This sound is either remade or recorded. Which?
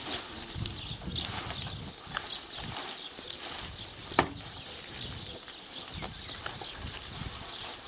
recorded